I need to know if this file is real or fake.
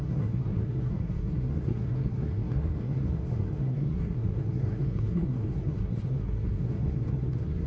fake